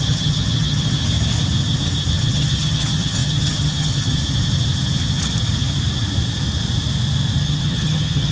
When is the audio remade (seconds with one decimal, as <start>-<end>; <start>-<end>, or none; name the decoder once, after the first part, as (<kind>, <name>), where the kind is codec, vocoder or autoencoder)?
0.0-1.0 (vocoder, HiFi-GAN); 2.2-4.2; 7.4-8.3